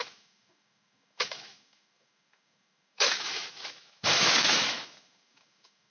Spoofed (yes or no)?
yes